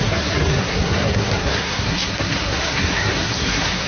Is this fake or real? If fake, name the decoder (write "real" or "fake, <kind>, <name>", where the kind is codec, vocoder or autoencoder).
fake, codec, SNAC